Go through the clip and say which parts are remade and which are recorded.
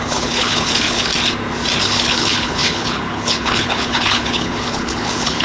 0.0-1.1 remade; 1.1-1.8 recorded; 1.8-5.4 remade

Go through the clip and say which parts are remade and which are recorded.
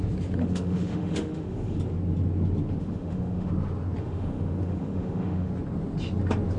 0.0-0.4 recorded; 0.4-1.8 remade; 1.8-2.8 recorded; 2.8-3.5 remade; 3.5-4.0 recorded; 4.0-5.5 remade; 5.5-6.6 recorded